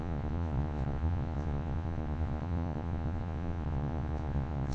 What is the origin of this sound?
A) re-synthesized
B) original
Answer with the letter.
A